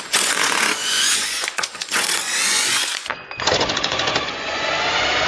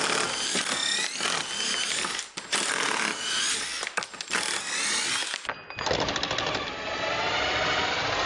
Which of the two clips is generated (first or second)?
first